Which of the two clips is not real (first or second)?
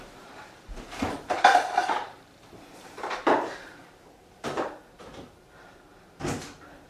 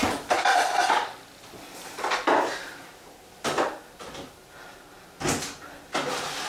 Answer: first